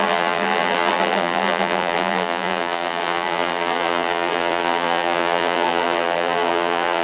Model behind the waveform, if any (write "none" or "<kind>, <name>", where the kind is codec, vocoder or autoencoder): vocoder, BigVGAN v2